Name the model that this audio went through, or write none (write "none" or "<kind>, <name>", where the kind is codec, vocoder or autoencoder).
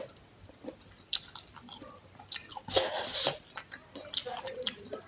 none